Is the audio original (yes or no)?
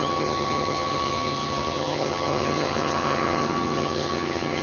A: no